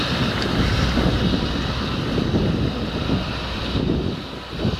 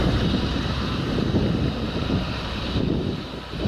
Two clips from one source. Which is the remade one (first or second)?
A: second